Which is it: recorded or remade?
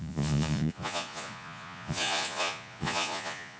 remade